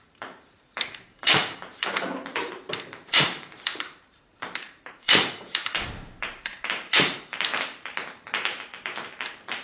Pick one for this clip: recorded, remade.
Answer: remade